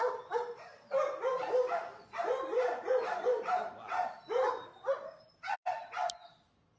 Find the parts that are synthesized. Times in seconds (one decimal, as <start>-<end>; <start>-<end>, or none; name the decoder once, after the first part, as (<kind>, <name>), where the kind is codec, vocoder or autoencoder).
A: 0.0-0.7 (vocoder, BigVGAN v2); 2.5-5.8